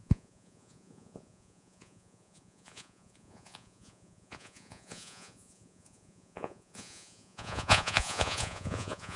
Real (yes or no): no